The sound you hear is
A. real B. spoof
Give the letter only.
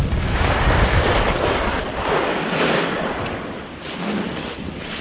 A